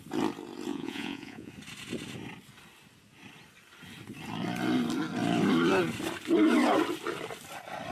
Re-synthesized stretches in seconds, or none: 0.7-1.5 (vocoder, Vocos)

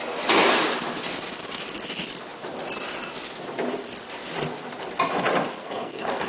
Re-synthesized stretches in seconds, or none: 5.6-6.3 (codec, SNAC)

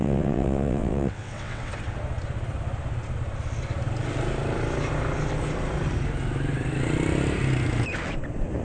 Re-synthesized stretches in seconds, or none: 0.0-1.7 (vocoder, WaveNeXt)

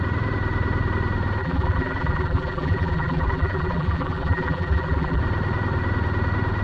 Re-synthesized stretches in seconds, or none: 1.4-5.2 (vocoder, BigVGAN v2)

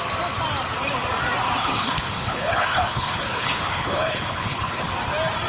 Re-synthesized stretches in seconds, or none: 1.6-4.9 (codec, HILCodec)

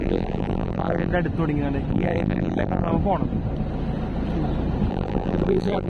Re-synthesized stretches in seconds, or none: 0.0-1.1 (vocoder, BigVGAN v2); 1.9-2.9; 4.9-5.9